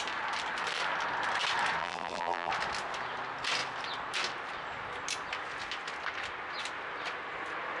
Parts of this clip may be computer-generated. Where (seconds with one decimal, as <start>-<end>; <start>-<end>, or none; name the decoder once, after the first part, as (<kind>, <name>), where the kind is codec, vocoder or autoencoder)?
1.8-2.5 (vocoder, BigVGAN v2)